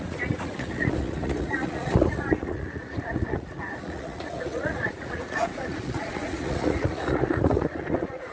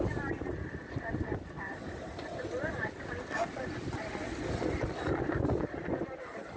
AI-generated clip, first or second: first